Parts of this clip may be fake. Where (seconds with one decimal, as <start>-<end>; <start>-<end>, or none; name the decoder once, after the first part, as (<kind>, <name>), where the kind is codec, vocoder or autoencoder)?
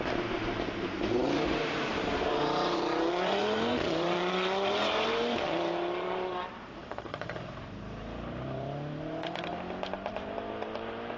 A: 0.0-9.5 (vocoder, BigVGAN v2); 10.1-11.2